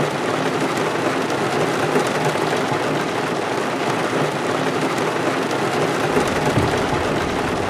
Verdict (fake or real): real